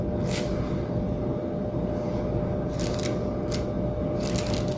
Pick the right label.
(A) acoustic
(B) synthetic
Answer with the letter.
A